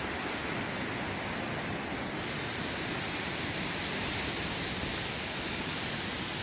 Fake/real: real